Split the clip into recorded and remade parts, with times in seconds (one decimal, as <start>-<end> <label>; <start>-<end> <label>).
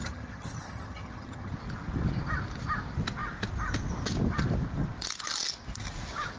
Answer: 0.0-1.5 remade; 1.5-6.4 recorded